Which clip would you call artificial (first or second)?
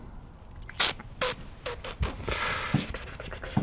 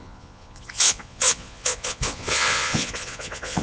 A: second